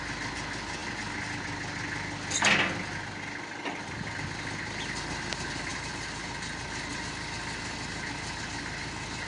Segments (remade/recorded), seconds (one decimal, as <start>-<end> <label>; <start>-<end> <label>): 0.0-9.3 recorded